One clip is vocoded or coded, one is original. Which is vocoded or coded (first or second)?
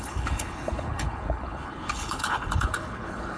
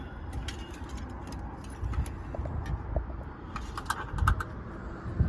first